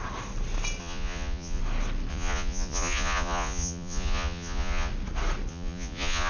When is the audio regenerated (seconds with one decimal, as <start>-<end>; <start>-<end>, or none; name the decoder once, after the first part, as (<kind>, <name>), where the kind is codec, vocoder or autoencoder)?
0.8-1.6 (vocoder, Vocos); 2.1-4.9; 5.5-6.3